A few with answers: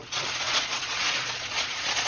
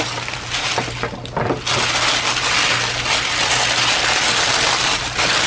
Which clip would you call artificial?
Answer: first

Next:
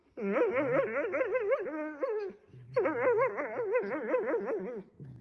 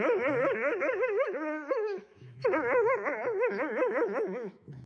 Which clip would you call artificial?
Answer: second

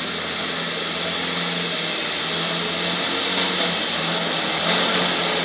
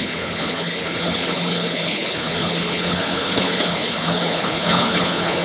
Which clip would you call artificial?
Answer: second